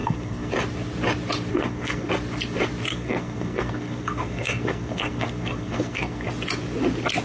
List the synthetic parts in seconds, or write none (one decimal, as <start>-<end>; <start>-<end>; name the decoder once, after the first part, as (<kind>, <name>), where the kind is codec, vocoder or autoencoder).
0.0-0.5 (codec, SNAC); 1.5-2.1; 2.9-6.3